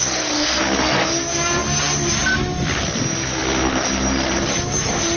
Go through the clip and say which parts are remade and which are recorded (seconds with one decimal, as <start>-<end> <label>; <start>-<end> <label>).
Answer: 0.0-0.6 remade; 0.6-5.2 recorded